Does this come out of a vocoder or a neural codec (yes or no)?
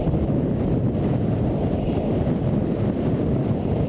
no